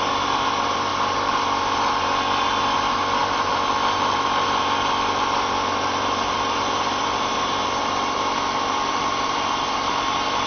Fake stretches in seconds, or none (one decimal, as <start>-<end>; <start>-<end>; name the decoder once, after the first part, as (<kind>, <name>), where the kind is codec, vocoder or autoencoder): none

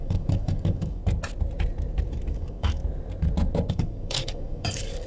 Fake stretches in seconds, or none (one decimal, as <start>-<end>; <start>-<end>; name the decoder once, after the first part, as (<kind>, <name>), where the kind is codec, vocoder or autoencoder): 0.0-1.0 (codec, DAC); 2.1-2.8; 3.7-5.1

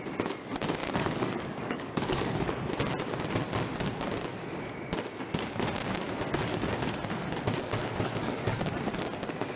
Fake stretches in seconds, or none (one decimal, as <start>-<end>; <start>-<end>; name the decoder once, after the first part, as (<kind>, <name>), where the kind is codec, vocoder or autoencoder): 0.8-2.7 (codec, DAC); 7.8-8.8

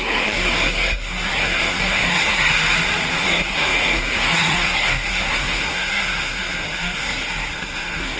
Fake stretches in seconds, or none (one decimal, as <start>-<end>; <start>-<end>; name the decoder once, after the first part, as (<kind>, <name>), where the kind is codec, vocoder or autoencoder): 0.0-2.6 (codec, SNAC); 3.2-8.2

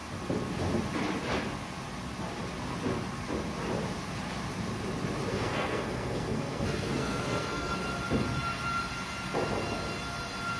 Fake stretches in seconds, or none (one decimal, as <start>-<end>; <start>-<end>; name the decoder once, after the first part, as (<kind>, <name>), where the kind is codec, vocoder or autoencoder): 5.3-7.8 (codec, SNAC)

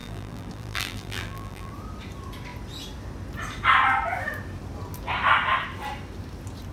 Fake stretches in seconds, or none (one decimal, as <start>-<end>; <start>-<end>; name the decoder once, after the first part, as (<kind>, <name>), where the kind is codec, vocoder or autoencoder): 0.0-1.7 (vocoder, BigVGAN v2)

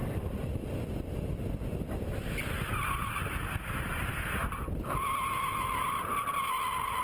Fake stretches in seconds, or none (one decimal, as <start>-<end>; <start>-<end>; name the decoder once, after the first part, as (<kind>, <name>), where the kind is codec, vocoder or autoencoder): 0.0-1.0 (vocoder, BigVGAN v2)